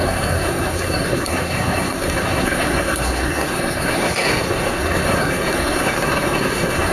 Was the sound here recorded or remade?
remade